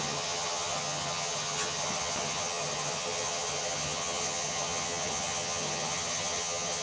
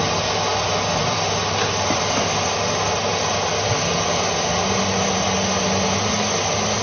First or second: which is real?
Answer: second